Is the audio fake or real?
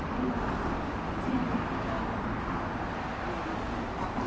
real